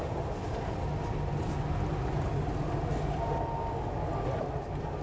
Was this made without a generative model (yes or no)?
yes